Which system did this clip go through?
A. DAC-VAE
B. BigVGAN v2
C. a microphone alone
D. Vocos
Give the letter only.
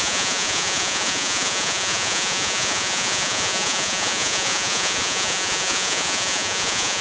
D